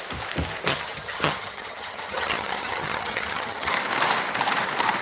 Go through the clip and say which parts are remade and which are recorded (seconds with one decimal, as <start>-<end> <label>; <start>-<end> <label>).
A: 0.0-0.7 recorded; 0.7-3.7 remade; 3.7-5.0 recorded